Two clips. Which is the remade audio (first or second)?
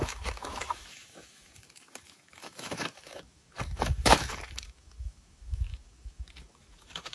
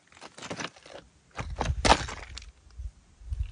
first